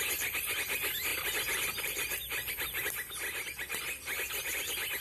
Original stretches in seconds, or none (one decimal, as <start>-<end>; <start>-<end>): 0.0-1.1; 4.1-5.0